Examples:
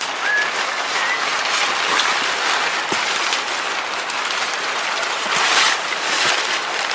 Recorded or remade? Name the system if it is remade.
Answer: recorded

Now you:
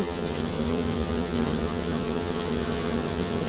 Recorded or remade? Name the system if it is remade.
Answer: remade, vocoder, HiFi-GAN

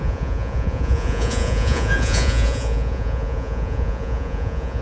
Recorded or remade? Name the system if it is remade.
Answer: remade, vocoder, Vocos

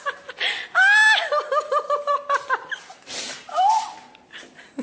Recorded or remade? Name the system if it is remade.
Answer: recorded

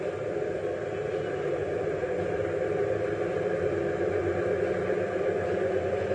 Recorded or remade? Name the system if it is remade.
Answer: recorded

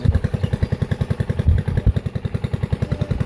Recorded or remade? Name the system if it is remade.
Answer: recorded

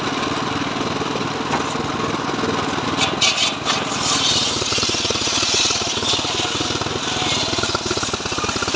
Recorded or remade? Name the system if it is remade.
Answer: recorded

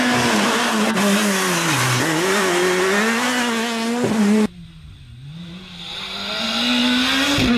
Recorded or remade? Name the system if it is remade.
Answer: recorded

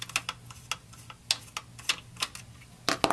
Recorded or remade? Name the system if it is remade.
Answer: recorded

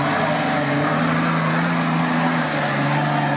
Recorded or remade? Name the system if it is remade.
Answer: recorded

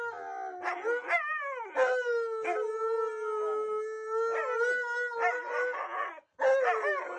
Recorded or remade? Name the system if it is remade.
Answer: recorded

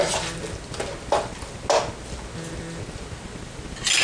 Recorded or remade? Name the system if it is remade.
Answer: recorded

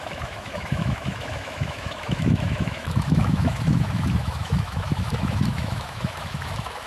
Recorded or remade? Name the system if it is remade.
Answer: remade, autoencoder, DAC-VAE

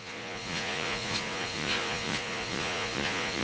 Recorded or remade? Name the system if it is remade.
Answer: remade, vocoder, Vocos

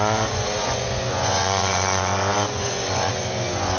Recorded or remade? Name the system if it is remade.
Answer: remade, vocoder, Vocos